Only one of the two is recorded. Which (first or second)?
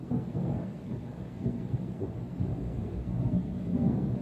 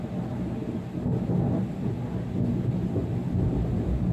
second